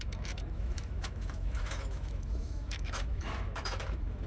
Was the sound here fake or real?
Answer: fake